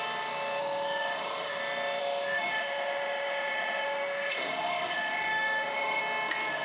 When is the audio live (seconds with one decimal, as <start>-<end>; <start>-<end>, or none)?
0.0-0.6; 1.6-2.0; 6.0-6.6